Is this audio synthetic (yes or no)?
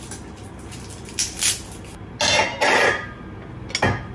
no